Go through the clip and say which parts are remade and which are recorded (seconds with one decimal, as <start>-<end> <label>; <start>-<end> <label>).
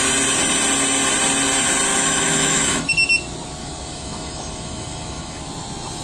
0.0-1.9 recorded; 1.9-2.9 remade; 2.9-3.6 recorded; 3.6-5.4 remade; 5.4-6.0 recorded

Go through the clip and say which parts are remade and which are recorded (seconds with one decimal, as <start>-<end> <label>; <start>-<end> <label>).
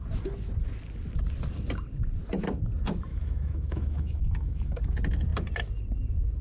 0.0-3.1 recorded; 3.1-4.8 remade; 4.8-6.4 recorded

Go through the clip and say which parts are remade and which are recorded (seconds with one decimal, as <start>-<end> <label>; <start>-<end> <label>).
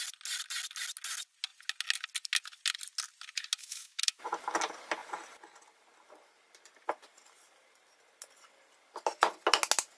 0.0-3.6 recorded; 3.6-4.2 remade; 4.2-10.0 recorded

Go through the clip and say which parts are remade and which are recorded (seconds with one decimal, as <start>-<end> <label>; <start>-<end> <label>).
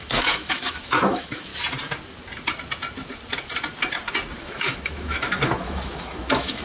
0.0-1.5 remade; 1.5-4.4 recorded; 4.4-6.6 remade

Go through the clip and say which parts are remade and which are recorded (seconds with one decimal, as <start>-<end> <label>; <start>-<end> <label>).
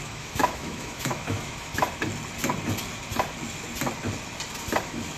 0.0-1.7 remade; 1.7-4.8 recorded; 4.8-5.2 remade